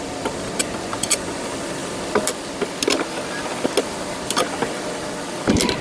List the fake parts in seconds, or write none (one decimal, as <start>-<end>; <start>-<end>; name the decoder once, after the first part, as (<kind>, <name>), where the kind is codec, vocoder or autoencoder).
0.6-1.4 (vocoder, Vocos)